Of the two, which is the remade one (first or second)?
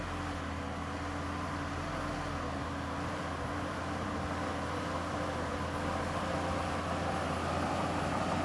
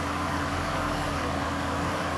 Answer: second